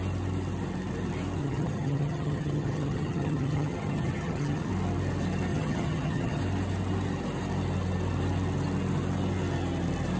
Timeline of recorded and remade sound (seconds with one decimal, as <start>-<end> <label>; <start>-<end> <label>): 0.0-1.4 recorded; 1.4-4.7 remade; 4.7-5.5 recorded; 5.5-6.4 remade; 6.4-10.2 recorded